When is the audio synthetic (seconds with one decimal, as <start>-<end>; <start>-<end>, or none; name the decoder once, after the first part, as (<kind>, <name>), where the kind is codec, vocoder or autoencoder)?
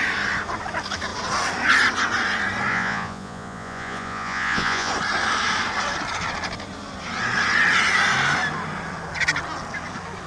2.7-4.9 (vocoder, Vocos)